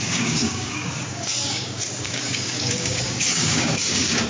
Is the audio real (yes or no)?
no